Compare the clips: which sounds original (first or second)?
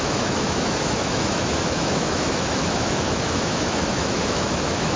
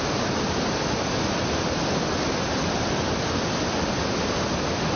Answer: second